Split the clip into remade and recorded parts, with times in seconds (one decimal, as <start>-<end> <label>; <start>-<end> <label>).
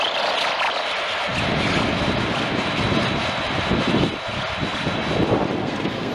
0.0-5.6 recorded; 5.6-6.1 remade